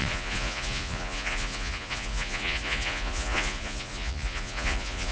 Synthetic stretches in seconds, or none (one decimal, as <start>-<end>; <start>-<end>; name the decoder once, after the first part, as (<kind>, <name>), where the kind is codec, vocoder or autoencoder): 0.0-5.1 (vocoder, Vocos)